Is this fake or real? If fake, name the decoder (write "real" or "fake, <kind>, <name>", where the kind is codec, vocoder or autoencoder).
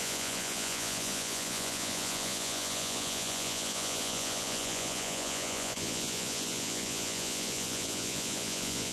fake, vocoder, Vocos